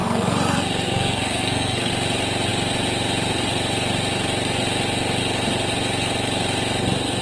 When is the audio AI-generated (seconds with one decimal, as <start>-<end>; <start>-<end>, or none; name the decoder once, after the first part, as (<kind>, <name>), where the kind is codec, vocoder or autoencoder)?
0.0-1.9 (codec, SNAC)